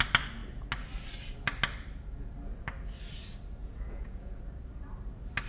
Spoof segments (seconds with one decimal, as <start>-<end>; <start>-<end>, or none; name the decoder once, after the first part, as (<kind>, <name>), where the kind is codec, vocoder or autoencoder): 3.6-4.4 (vocoder, Vocos)